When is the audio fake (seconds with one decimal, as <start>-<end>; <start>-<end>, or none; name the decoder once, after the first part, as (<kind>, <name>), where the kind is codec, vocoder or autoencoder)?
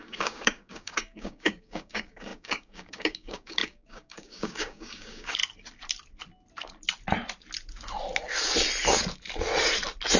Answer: 0.0-5.4 (codec, DAC)